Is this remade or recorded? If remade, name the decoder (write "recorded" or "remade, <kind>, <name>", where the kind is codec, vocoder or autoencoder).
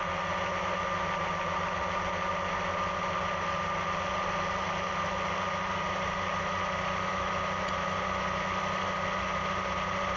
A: recorded